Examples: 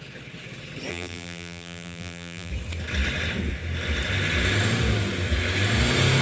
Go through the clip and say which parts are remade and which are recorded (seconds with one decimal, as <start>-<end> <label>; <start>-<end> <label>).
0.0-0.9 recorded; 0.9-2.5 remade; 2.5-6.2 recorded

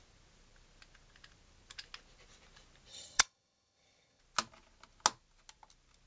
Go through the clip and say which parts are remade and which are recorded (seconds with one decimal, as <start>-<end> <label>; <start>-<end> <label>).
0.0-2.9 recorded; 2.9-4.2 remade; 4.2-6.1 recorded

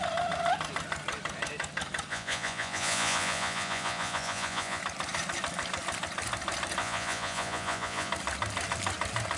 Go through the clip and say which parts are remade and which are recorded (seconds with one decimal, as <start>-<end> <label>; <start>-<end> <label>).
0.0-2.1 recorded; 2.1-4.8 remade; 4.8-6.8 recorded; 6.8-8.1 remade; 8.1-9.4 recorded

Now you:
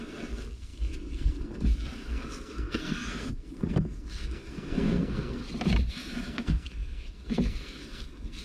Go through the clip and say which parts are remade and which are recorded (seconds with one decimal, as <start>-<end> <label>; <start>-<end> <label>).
0.0-5.4 remade; 5.4-5.9 recorded; 5.9-8.4 remade